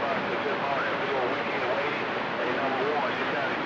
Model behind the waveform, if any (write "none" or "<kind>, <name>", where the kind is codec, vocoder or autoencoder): none